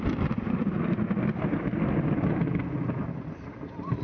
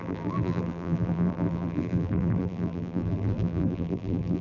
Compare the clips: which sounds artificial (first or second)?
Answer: second